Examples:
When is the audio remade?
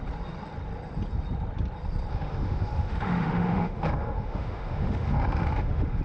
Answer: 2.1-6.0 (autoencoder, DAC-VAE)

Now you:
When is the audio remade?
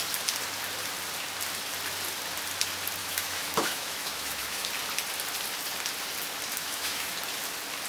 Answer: 3.0-4.7 (autoencoder, DAC-VAE); 6.5-7.1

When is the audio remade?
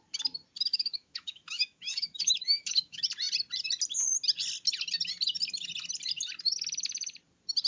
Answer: 0.7-3.0 (autoencoder, DAC-VAE)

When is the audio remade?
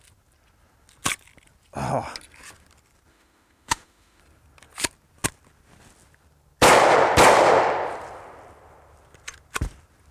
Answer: 3.1-4.2 (autoencoder, DAC-VAE)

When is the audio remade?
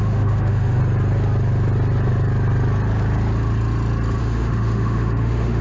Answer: 0.0-0.8 (autoencoder, DAC-VAE); 4.2-5.6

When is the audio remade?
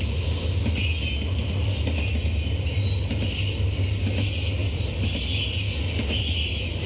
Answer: none